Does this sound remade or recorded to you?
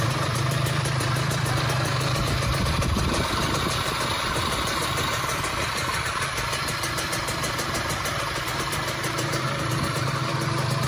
remade